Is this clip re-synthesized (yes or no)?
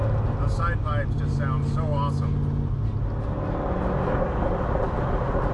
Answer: no